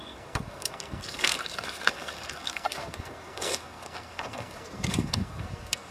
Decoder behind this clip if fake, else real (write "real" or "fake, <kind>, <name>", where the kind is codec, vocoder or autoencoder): fake, codec, SNAC